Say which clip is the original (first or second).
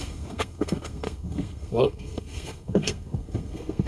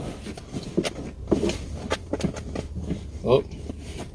second